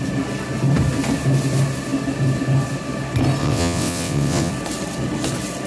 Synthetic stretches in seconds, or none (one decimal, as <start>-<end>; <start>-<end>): 3.4-4.5